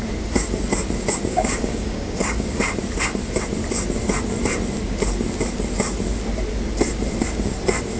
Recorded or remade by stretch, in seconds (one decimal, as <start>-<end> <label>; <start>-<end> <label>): 0.0-1.3 recorded; 1.3-2.6 remade; 2.6-8.0 recorded